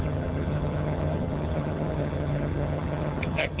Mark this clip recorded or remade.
remade